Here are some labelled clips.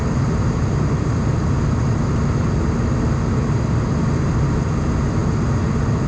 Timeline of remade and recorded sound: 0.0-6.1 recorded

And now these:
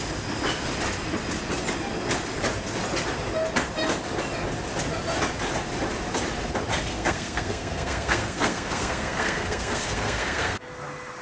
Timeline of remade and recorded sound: 0.0-6.9 recorded; 6.9-10.6 remade; 10.6-11.2 recorded

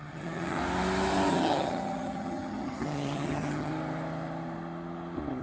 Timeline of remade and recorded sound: 0.0-0.6 remade; 0.6-1.3 recorded; 1.3-3.7 remade; 3.7-5.4 recorded

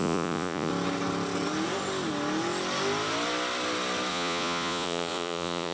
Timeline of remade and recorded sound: 0.0-0.7 remade; 0.7-4.1 recorded; 4.1-5.7 remade

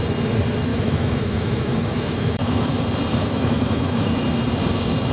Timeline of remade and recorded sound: 0.0-0.7 recorded; 0.7-2.7 remade; 2.7-3.1 recorded; 3.1-4.1 remade; 4.1-5.1 recorded

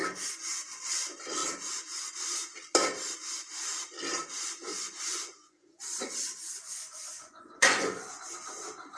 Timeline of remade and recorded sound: 0.0-4.7 recorded; 4.7-5.8 remade; 5.8-6.8 recorded; 6.8-8.3 remade; 8.3-9.0 recorded